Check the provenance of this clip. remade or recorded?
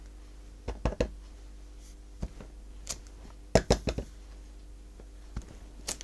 recorded